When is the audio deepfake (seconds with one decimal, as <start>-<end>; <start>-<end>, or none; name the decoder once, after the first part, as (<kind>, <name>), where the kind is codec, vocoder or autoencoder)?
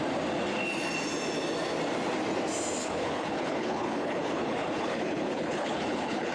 2.8-6.3 (codec, HILCodec)